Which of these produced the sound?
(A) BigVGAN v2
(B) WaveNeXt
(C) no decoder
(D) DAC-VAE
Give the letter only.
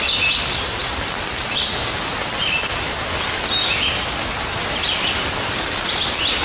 C